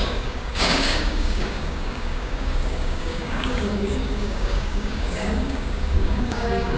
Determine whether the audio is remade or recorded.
remade